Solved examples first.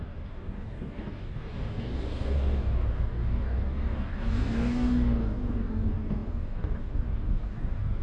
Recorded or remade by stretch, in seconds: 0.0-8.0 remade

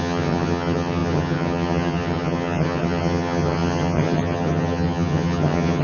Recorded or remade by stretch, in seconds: 0.0-5.8 remade